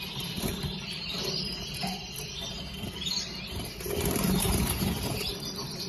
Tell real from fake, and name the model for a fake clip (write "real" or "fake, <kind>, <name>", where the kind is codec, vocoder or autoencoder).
fake, vocoder, BigVGAN v2